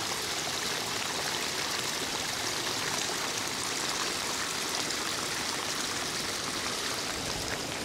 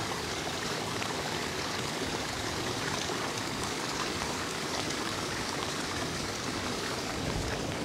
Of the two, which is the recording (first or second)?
first